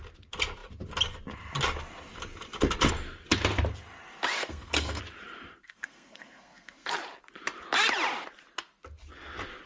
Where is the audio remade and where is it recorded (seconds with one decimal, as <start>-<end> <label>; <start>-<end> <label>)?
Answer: 0.0-4.4 recorded; 4.4-5.0 remade; 5.0-5.6 recorded; 5.6-6.9 remade; 6.9-9.7 recorded

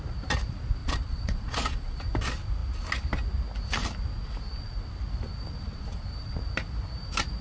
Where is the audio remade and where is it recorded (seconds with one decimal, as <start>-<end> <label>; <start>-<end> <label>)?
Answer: 0.0-0.8 recorded; 0.8-2.0 remade; 2.0-7.4 recorded

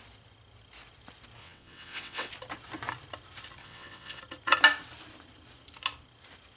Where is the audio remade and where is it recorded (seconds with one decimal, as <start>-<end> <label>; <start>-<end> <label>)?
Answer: 0.0-1.4 recorded; 1.4-2.3 remade; 2.3-3.6 recorded; 3.6-4.2 remade; 4.2-6.6 recorded

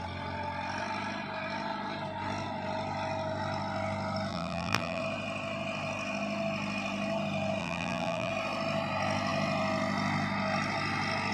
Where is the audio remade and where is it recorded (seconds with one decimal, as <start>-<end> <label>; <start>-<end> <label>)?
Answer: 0.0-4.3 recorded; 4.3-5.0 remade; 5.0-7.6 recorded; 7.6-8.3 remade; 8.3-11.3 recorded

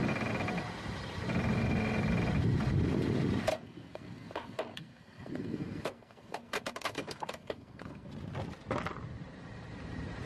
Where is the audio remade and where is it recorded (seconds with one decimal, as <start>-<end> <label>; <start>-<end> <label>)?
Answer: 0.0-3.5 recorded; 3.5-8.1 remade; 8.1-10.3 recorded

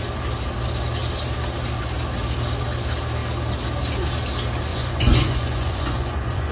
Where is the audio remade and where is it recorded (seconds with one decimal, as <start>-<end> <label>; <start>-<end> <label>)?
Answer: 0.0-4.7 recorded; 4.7-6.5 remade

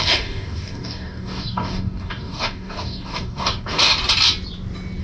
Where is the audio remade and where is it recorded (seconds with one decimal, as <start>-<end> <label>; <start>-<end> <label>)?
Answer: 0.0-3.9 remade; 3.9-5.0 recorded